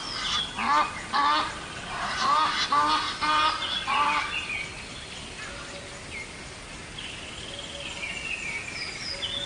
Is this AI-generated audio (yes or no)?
no